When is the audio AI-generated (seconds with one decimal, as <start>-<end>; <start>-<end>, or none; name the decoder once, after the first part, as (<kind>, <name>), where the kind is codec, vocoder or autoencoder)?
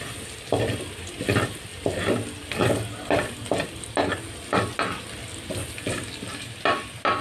none